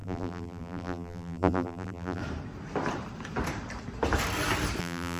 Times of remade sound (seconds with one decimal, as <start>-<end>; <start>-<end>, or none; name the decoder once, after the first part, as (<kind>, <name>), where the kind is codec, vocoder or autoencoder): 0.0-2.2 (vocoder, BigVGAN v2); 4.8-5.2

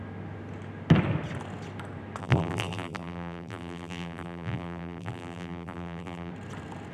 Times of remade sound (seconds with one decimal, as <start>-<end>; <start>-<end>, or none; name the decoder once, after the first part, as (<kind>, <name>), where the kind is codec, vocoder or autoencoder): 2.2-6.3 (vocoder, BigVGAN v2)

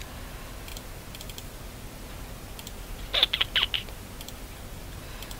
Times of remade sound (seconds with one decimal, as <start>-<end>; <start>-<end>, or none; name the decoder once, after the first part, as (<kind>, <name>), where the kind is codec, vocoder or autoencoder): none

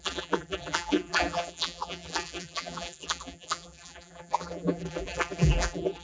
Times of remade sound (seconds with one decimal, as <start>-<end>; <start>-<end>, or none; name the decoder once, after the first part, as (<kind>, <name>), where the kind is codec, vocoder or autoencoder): 0.0-6.0 (vocoder, BigVGAN v2)

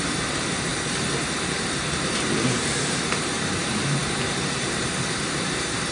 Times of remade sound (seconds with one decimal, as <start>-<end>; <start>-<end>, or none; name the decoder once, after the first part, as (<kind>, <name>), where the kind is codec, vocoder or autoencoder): 0.0-0.7 (vocoder, BigVGAN v2); 1.5-5.9

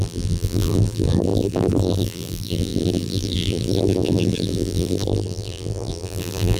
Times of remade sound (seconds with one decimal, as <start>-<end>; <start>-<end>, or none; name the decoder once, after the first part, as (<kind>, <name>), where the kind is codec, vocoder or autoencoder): 0.0-6.6 (vocoder, BigVGAN v2)